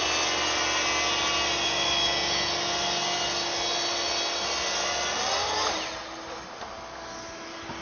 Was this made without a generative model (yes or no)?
yes